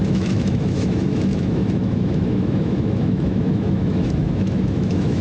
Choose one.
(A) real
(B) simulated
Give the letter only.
B